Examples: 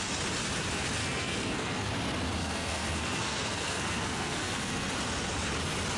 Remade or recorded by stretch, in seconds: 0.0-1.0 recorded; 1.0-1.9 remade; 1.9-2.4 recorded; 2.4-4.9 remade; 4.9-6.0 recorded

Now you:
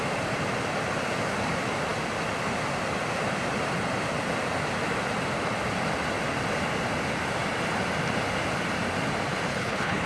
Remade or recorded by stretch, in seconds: 0.0-9.5 recorded; 9.5-10.1 remade

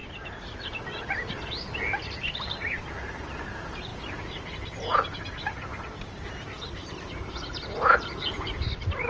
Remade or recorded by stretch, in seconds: 0.0-9.1 recorded

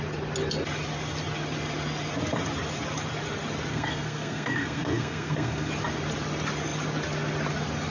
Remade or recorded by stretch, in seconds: 0.0-3.7 recorded; 3.7-5.7 remade; 5.7-7.9 recorded

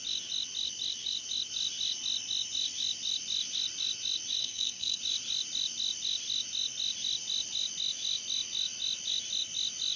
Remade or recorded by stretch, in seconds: 0.0-4.4 recorded; 4.4-5.0 remade; 5.0-10.0 recorded

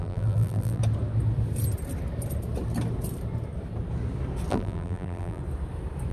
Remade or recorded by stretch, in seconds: 0.0-0.8 remade; 0.8-4.5 recorded; 4.5-5.4 remade; 5.4-6.1 recorded

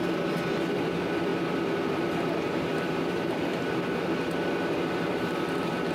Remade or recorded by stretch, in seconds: 0.0-3.5 remade; 3.5-4.8 recorded; 4.8-5.9 remade

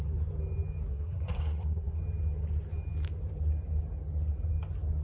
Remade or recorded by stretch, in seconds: 0.0-0.9 recorded; 0.9-2.0 remade; 2.0-5.0 recorded